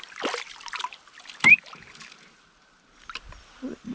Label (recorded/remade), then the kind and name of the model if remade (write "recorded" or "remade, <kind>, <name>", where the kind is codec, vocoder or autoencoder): recorded